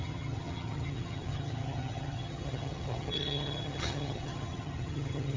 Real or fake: fake